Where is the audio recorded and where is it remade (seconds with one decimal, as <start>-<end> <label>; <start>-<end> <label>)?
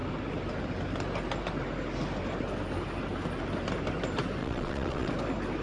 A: 0.0-4.4 recorded; 4.4-5.1 remade; 5.1-5.6 recorded